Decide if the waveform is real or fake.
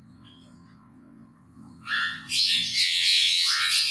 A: fake